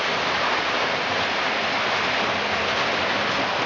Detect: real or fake real